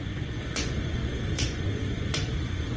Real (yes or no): no